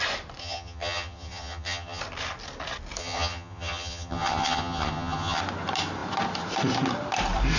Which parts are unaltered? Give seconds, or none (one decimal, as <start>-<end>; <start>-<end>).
0.0-0.4; 2.0-3.0; 5.4-7.6

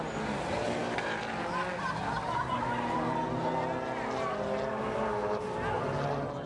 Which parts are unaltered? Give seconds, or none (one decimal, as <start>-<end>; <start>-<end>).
0.0-6.5

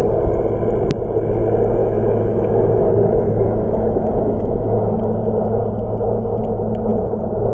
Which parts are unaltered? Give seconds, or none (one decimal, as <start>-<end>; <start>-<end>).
0.0-1.8; 5.0-7.5

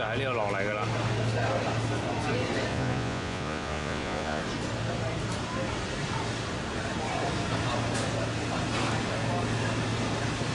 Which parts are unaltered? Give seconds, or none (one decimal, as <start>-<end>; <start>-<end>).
0.0-2.7; 4.4-10.5

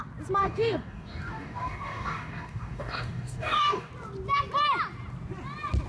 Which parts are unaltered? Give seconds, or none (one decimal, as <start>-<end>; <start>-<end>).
0.0-0.4; 3.9-5.9

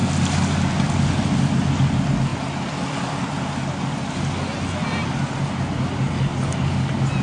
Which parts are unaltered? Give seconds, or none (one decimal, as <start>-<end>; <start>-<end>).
0.0-7.2